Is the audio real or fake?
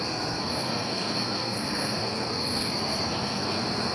fake